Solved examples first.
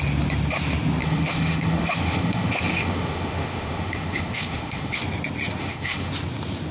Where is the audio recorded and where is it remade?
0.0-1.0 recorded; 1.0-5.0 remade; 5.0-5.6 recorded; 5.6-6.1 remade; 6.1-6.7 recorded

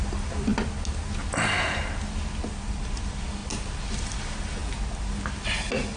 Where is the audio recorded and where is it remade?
0.0-0.5 remade; 0.5-2.6 recorded; 2.6-3.4 remade; 3.4-3.9 recorded; 3.9-4.6 remade; 4.6-6.0 recorded

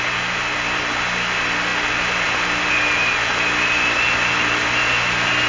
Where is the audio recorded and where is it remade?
0.0-5.5 recorded

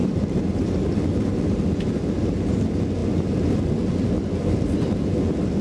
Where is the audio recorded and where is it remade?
0.0-0.9 remade; 0.9-5.6 recorded

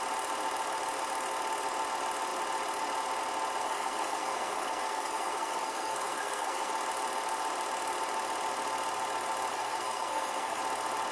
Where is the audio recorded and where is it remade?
0.0-3.6 recorded; 3.6-6.7 remade; 6.7-9.5 recorded; 9.5-10.6 remade; 10.6-11.1 recorded

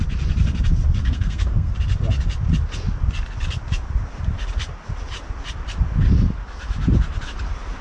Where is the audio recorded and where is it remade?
0.0-1.0 recorded; 1.0-1.7 remade; 1.7-7.8 recorded